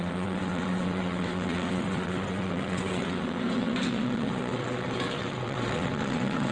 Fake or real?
fake